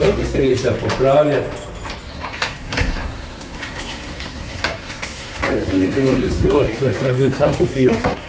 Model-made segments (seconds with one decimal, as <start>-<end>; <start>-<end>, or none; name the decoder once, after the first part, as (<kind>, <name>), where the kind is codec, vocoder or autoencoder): 0.0-0.5 (codec, SNAC); 2.1-8.3